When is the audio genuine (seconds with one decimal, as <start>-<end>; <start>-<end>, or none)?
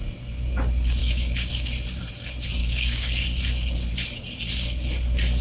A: 0.0-1.0; 1.5-2.6; 3.2-5.4